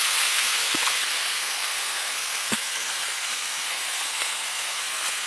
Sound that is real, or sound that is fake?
fake